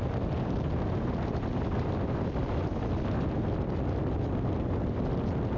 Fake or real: real